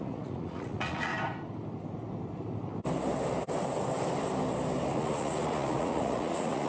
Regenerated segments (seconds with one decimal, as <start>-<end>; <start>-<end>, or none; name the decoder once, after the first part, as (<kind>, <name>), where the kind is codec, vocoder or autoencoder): 0.0-1.1 (vocoder, Vocos); 4.9-6.7